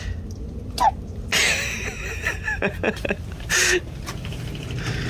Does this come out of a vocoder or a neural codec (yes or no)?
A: no